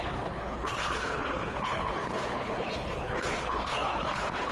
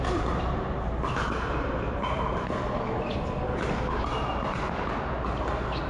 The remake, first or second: first